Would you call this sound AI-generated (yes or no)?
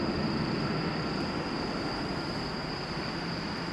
no